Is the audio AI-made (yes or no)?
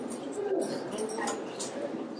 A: no